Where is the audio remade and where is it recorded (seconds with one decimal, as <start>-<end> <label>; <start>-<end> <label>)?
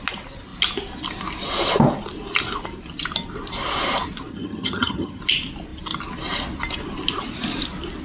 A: 0.0-4.3 recorded; 4.3-5.2 remade; 5.2-8.0 recorded